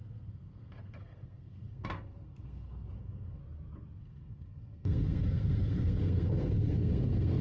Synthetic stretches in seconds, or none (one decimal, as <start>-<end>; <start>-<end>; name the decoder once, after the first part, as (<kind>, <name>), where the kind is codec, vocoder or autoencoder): 0.0-3.4 (codec, SNAC); 4.0-7.4